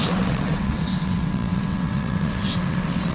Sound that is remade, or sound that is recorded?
remade